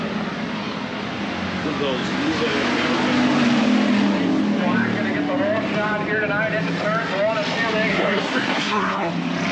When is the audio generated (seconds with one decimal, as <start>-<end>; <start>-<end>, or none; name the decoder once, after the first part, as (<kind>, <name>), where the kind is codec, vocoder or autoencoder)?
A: 7.9-9.1 (codec, SNAC)